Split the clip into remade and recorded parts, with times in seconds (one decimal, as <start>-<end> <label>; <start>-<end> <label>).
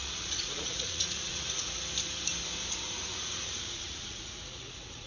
0.0-1.8 remade; 1.8-2.9 recorded; 2.9-5.1 remade